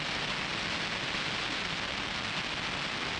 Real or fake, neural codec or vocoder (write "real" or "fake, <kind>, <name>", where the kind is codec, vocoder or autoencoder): real